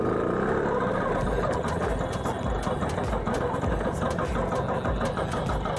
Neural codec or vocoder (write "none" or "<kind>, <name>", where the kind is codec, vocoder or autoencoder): none